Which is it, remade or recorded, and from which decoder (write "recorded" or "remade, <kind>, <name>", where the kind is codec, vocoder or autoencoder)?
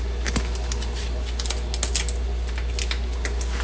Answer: recorded